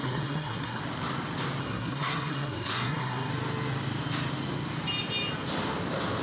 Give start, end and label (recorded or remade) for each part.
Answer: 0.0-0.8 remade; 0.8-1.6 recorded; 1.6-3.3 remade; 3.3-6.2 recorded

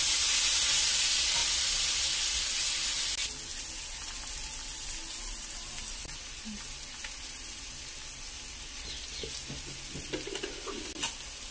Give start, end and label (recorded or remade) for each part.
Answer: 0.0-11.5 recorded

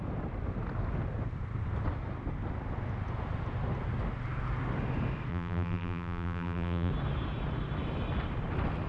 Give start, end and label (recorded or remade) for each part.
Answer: 0.0-5.3 recorded; 5.3-6.9 remade; 6.9-8.9 recorded